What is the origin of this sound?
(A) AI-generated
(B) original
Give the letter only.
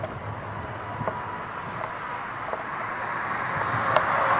B